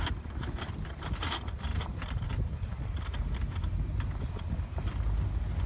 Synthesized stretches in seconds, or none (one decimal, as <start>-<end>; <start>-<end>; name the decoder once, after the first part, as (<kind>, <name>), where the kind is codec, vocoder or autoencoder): none